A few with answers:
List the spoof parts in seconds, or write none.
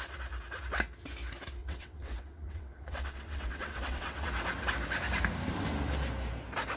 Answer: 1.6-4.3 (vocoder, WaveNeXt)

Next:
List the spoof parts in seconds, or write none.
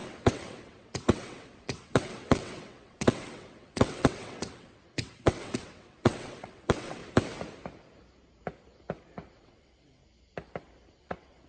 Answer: 0.0-7.0 (vocoder, WaveNeXt); 9.4-10.0; 11.0-11.5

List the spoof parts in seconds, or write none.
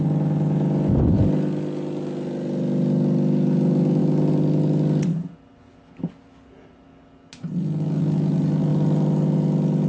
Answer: none